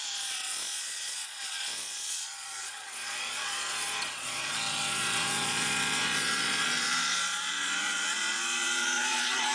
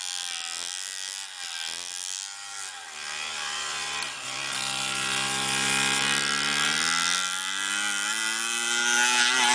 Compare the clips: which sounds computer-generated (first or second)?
first